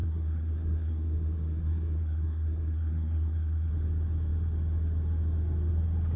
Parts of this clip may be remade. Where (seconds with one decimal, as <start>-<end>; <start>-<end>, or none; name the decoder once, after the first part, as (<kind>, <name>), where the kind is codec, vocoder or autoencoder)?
0.0-3.7 (codec, SNAC)